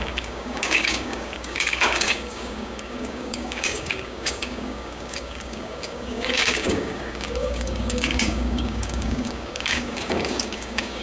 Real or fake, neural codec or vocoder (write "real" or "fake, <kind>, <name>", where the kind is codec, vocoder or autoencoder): fake, codec, DAC